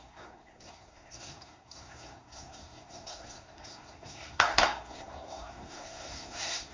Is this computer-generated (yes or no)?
yes